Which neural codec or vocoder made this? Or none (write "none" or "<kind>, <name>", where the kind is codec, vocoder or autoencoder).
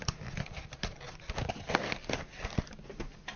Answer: none